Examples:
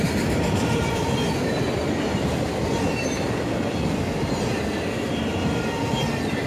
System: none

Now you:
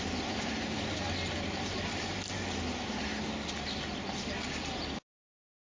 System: none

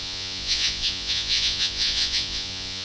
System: vocoder, Vocos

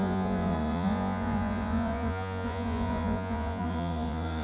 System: vocoder, Vocos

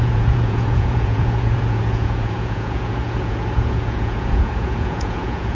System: vocoder, Vocos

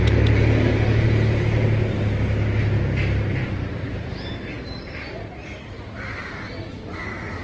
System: none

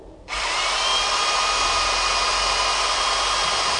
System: none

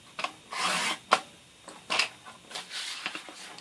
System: none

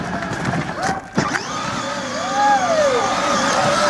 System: none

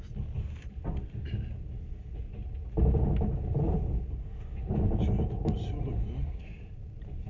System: none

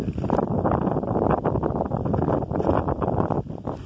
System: none